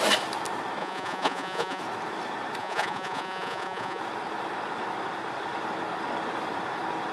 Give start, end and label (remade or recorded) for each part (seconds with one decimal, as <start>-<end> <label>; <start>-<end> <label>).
0.0-0.8 recorded; 0.8-1.8 remade; 1.8-2.6 recorded; 2.6-4.0 remade; 4.0-7.1 recorded